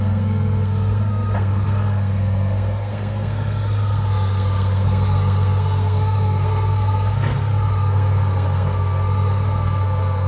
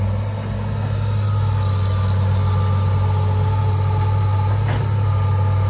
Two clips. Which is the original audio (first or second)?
second